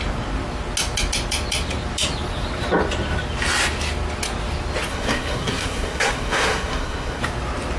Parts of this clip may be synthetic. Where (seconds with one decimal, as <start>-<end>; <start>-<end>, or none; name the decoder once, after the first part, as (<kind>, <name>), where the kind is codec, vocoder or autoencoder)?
4.9-7.2 (codec, SNAC)